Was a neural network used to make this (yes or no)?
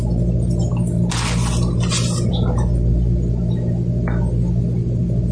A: no